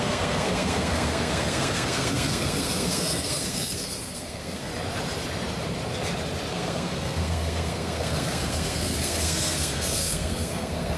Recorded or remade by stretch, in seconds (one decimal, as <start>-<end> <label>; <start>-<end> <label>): 0.0-4.7 remade; 4.7-6.5 recorded; 6.5-11.0 remade

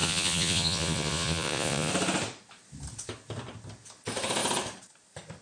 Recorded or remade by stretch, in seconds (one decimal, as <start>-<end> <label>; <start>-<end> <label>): 0.0-1.9 remade; 1.9-5.4 recorded